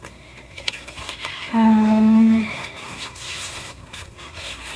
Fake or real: fake